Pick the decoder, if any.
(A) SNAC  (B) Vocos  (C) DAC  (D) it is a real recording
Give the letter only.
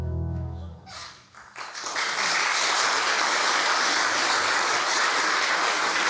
C